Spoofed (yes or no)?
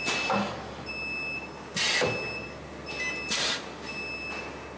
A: no